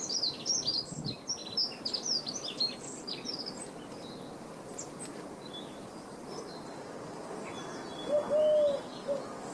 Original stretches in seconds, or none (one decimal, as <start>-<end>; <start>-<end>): 0.0-9.5